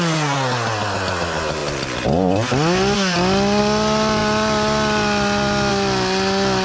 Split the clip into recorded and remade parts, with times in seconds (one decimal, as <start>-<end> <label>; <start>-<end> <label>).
0.0-6.6 recorded